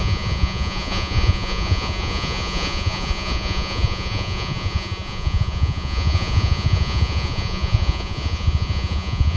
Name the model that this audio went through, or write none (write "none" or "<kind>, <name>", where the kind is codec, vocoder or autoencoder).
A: vocoder, Vocos